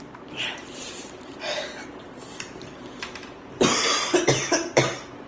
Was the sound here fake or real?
fake